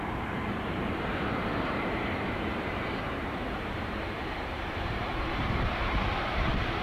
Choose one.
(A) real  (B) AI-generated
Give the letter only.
B